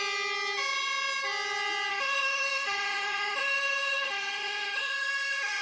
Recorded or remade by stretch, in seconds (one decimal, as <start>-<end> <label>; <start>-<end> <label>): 0.0-1.9 recorded; 1.9-5.6 remade